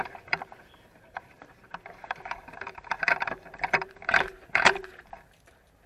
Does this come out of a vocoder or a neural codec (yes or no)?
yes